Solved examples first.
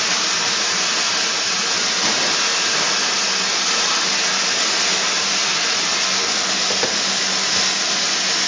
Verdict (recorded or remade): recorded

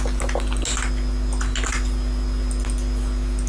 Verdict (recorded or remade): recorded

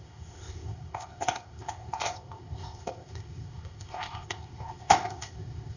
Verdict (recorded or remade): remade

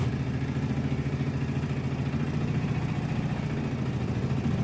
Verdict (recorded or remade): remade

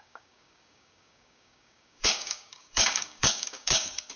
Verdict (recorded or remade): remade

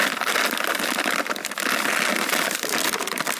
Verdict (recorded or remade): recorded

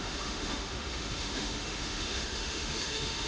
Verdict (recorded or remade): remade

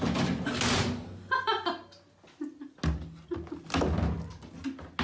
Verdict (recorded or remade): recorded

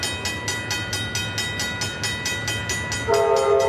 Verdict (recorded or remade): recorded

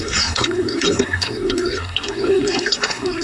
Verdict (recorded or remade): remade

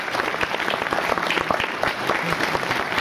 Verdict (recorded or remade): recorded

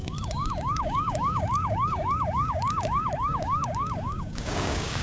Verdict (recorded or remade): remade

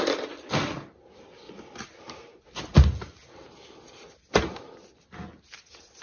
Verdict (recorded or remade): recorded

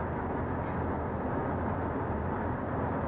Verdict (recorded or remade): recorded